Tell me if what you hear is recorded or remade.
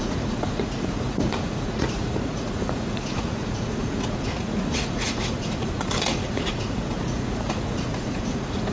remade